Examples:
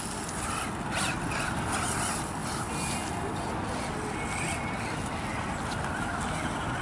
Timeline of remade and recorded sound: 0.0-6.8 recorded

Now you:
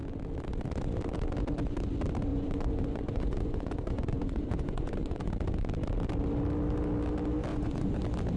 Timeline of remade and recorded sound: 0.0-2.3 recorded; 2.3-5.3 remade; 5.3-7.5 recorded; 7.5-8.0 remade; 8.0-8.4 recorded

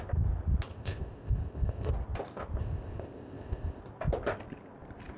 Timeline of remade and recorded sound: 0.0-0.7 recorded; 0.7-1.9 remade; 1.9-2.6 recorded; 2.6-3.8 remade; 3.8-5.2 recorded

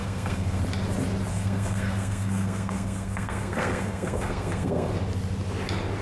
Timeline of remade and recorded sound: 0.0-0.6 remade; 0.6-1.3 recorded; 1.3-4.9 remade; 4.9-6.0 recorded

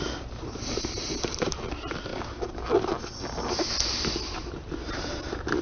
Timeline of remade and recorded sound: 0.0-5.6 recorded

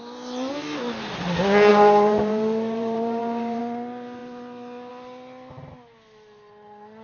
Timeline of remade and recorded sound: 0.0-1.7 recorded; 1.7-3.6 remade; 3.6-7.0 recorded